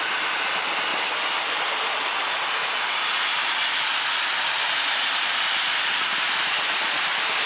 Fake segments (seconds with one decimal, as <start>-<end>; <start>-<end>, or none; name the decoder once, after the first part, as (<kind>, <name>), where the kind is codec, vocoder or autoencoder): none